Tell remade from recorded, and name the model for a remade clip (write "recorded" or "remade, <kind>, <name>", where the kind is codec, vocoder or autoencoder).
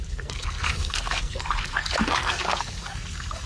remade, codec, SNAC